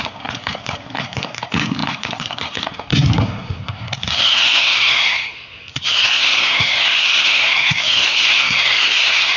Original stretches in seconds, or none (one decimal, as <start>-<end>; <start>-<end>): none